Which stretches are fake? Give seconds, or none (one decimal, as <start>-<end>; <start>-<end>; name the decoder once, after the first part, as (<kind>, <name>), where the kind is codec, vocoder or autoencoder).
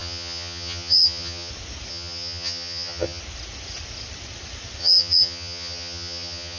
0.0-1.5 (vocoder, HiFi-GAN); 1.9-3.2; 4.8-6.6